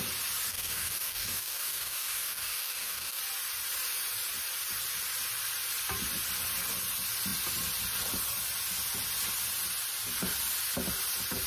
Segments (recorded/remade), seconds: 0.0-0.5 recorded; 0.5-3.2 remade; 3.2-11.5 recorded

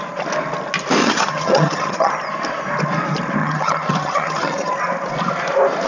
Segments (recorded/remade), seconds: 0.0-1.0 recorded; 1.0-2.1 remade; 2.1-3.4 recorded; 3.4-4.7 remade; 4.7-5.9 recorded

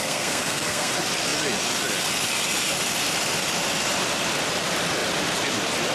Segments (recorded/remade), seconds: 0.0-0.9 remade; 0.9-5.9 recorded

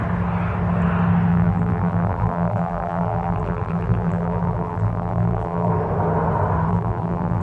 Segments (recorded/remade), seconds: 0.0-1.3 recorded; 1.3-5.7 remade; 5.7-6.7 recorded; 6.7-7.4 remade

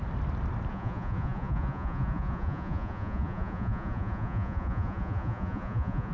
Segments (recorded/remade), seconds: 0.0-0.7 recorded; 0.7-6.1 remade

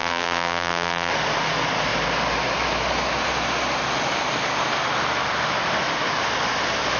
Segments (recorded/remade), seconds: 0.0-1.1 remade; 1.1-7.0 recorded

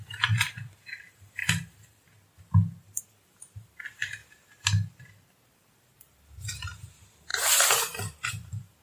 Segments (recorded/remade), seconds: 0.0-1.4 remade; 1.4-3.0 recorded; 3.0-4.2 remade; 4.2-5.0 recorded; 5.0-8.8 remade